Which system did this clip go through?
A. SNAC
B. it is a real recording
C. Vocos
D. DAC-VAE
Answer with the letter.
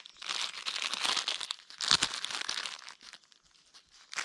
B